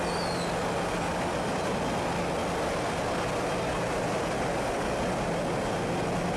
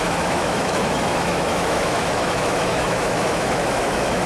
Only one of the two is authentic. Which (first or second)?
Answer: first